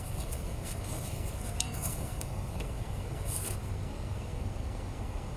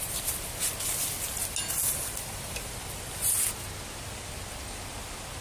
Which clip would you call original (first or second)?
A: second